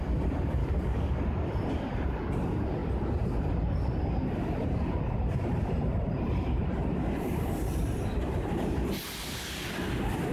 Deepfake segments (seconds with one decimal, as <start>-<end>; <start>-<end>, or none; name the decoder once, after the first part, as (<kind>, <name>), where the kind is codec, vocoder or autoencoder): 0.6-1.2 (codec, DAC)